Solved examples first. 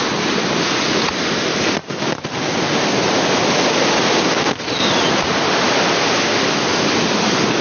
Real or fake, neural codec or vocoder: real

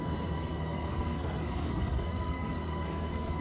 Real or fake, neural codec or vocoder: fake, codec, SNAC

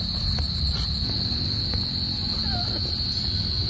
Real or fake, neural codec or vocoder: real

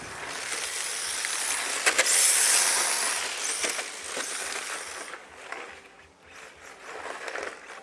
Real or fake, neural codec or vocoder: real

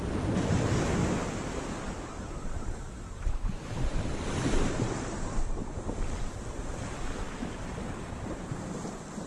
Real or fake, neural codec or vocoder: real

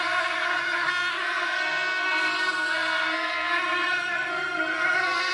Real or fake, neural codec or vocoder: fake, codec, SNAC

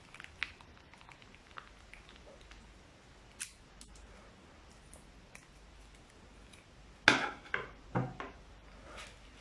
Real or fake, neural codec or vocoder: real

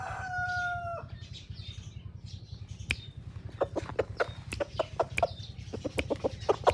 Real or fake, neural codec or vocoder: real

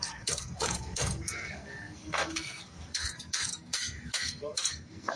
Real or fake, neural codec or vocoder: fake, codec, SNAC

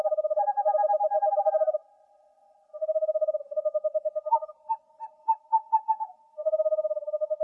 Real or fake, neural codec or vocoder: real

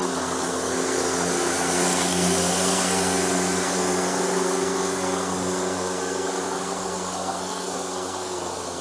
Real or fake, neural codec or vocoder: fake, codec, SNAC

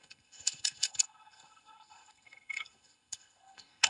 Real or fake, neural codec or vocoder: fake, codec, SNAC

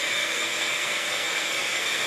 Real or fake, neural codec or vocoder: fake, codec, SNAC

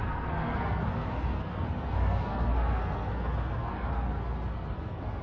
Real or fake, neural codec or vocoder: fake, codec, SNAC